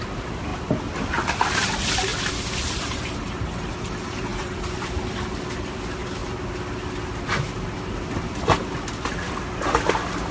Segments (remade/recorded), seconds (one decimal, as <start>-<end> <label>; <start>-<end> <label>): 0.0-2.1 recorded; 2.1-3.0 remade; 3.0-4.3 recorded; 4.3-5.8 remade; 5.8-10.3 recorded